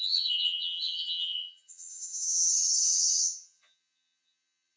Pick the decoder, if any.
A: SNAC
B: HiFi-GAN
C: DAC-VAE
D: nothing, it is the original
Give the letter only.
B